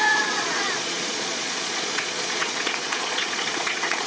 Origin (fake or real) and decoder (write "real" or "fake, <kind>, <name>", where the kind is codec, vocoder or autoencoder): fake, vocoder, Vocos